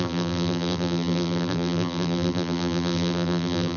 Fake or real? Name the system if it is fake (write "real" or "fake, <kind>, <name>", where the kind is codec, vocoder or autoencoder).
fake, vocoder, BigVGAN v2